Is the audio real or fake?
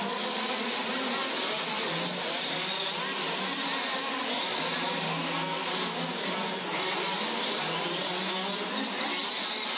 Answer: real